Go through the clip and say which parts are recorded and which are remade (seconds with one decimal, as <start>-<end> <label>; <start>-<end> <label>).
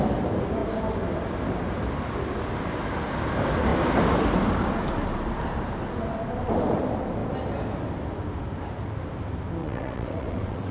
0.0-9.6 recorded; 9.6-10.7 remade